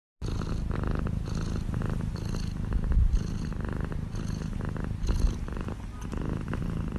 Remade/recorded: recorded